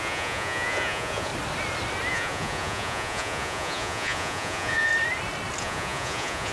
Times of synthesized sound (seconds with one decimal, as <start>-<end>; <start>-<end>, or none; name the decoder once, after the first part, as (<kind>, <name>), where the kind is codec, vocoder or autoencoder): 0.0-1.3 (vocoder, Vocos); 2.1-4.9; 5.6-6.5